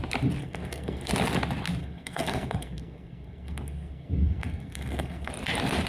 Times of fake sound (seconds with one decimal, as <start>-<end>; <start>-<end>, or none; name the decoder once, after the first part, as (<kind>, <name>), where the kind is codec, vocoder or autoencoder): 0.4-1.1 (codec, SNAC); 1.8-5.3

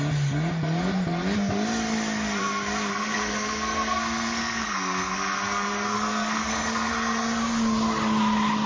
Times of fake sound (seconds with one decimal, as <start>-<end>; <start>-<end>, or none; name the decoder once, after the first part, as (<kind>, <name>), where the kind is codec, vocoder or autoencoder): 2.9-6.9 (codec, SNAC)

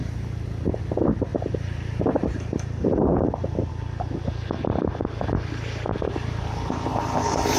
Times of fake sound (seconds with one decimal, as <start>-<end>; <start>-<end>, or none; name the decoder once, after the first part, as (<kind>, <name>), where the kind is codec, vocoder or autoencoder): 1.3-3.7 (vocoder, BigVGAN v2); 5.9-7.6

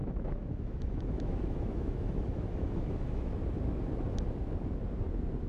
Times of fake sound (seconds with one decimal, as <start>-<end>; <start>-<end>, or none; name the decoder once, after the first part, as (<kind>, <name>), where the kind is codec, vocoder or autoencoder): 0.0-3.3 (autoencoder, DAC-VAE)

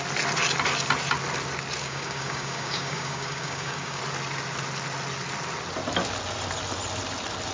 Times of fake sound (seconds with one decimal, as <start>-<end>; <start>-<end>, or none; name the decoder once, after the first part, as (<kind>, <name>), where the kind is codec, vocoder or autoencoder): 1.8-4.0 (codec, DAC)

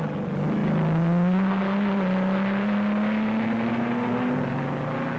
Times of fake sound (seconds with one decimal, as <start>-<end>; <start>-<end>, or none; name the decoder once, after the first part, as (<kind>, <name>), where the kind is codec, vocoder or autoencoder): none

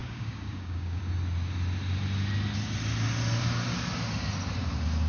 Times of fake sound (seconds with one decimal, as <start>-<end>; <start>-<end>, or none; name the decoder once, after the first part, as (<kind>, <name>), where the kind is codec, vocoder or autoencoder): 0.0-1.0 (codec, DAC)